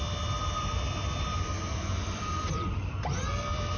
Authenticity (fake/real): fake